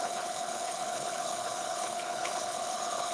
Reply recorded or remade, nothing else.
remade